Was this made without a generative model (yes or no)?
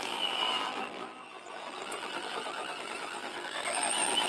no